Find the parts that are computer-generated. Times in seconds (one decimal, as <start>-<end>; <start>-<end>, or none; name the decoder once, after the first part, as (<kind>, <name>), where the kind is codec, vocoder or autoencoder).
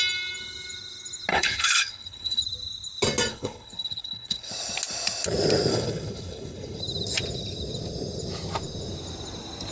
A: 1.3-2.4 (codec, HILCodec); 3.3-4.5; 5.7-6.8